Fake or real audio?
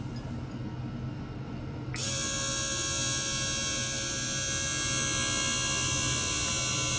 real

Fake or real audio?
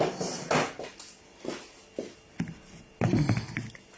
real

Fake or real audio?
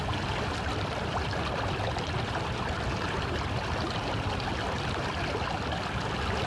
real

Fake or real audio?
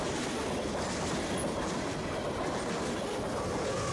real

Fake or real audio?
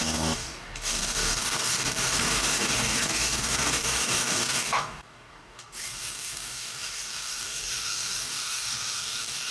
fake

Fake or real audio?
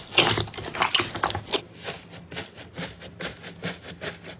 real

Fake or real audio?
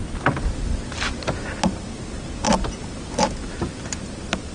real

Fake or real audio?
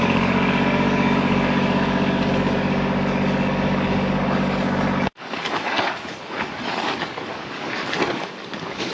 fake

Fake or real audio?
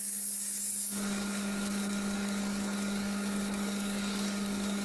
fake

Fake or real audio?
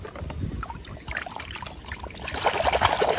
real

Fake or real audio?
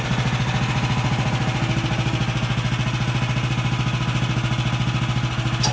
real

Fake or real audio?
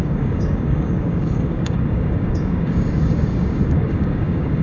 fake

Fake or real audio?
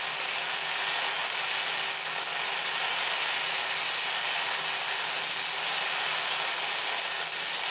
real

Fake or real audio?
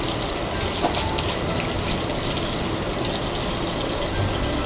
real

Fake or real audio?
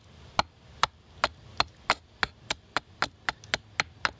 real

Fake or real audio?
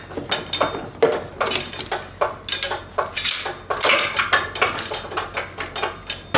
real